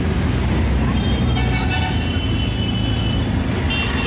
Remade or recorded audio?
recorded